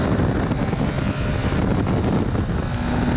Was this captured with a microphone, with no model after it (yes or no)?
yes